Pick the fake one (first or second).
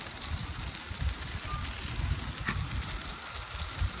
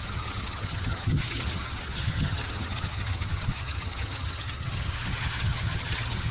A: second